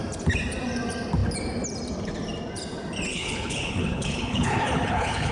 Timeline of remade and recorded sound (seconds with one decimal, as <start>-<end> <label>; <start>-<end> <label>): 0.0-3.1 recorded; 3.1-5.3 remade